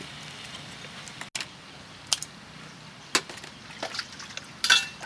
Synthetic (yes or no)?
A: no